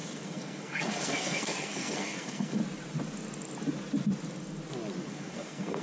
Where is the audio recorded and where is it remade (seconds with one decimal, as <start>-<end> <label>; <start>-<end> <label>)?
0.0-2.6 remade; 2.6-5.1 recorded; 5.1-5.8 remade